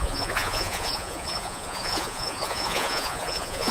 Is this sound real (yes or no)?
no